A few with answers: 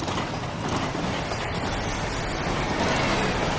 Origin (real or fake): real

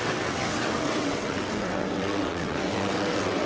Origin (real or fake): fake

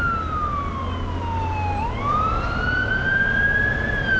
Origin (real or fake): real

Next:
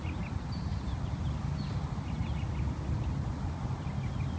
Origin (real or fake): real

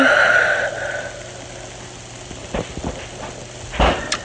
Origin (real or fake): real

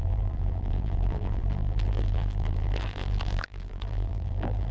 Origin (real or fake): fake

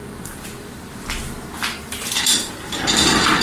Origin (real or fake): fake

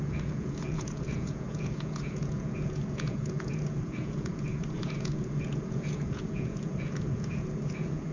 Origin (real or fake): fake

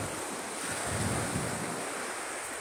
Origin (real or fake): fake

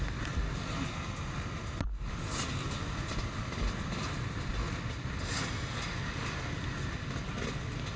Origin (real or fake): real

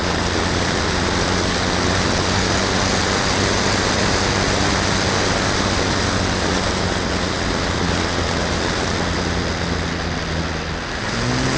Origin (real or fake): real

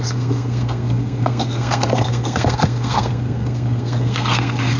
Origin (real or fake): fake